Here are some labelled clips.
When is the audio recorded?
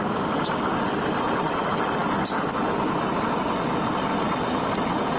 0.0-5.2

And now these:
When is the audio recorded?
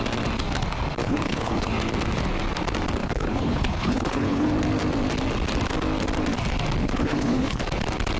0.0-1.0; 1.7-3.0; 4.5-6.8; 7.6-8.2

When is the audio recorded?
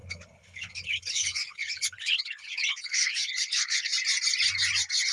3.9-5.1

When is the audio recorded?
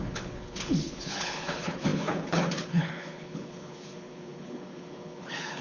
none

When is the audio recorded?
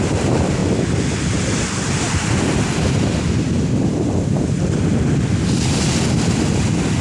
0.0-7.0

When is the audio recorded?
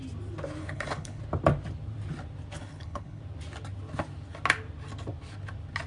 0.0-0.6; 1.2-2.6; 3.2-5.9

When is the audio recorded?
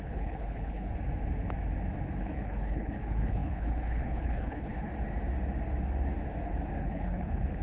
0.9-2.2; 4.9-6.8